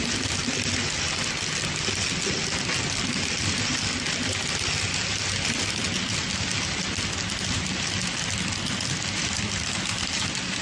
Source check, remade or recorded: recorded